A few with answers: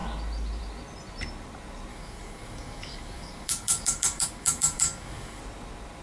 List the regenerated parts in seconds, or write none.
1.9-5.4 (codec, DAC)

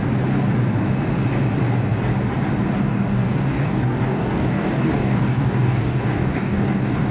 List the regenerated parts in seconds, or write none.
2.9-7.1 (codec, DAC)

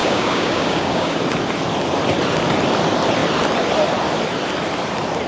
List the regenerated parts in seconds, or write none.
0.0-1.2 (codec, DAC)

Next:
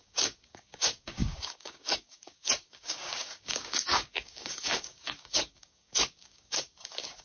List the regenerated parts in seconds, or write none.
0.0-7.2 (codec, DAC)

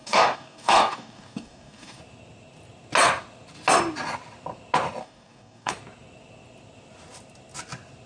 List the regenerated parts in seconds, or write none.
0.0-2.0 (codec, DAC); 5.0-5.7

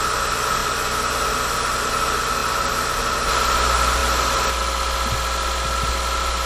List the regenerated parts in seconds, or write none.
none

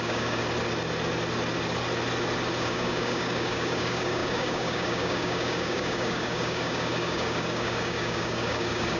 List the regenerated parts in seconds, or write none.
0.0-0.4 (codec, DAC); 2.6-9.0

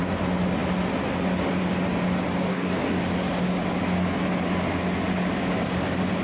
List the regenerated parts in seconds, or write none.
2.5-3.0 (codec, DAC)